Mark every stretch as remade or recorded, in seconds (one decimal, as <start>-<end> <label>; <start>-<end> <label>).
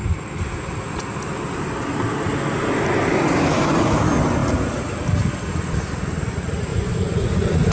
0.0-6.7 recorded; 6.7-7.7 remade